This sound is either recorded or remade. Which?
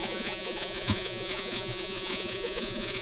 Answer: remade